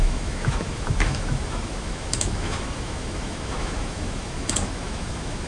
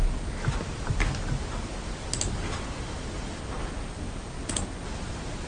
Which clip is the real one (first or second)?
second